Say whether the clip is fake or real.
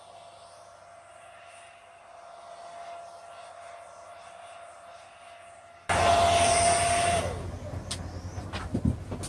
real